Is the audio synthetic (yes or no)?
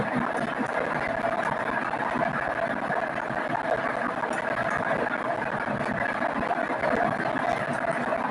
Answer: no